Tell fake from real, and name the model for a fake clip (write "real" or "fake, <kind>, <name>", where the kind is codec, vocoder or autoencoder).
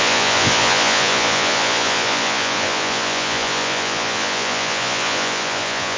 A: fake, vocoder, Vocos